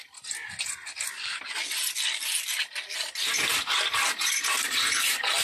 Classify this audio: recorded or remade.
recorded